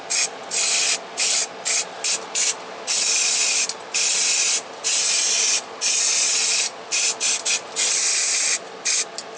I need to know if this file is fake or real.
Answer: real